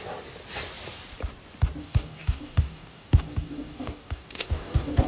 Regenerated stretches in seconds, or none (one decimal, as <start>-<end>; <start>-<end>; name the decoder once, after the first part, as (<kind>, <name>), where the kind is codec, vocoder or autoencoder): 1.8-5.1 (codec, DAC)